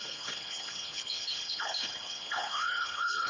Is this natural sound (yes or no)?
no